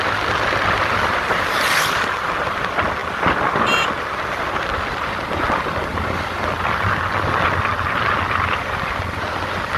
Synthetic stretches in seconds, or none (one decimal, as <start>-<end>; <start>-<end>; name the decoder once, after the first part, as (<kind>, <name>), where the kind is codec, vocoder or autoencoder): none